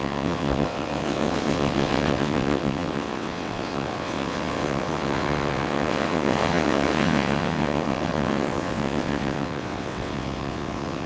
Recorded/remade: remade